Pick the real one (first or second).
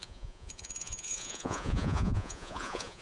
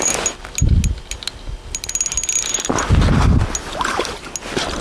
second